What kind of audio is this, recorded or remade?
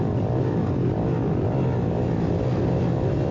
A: recorded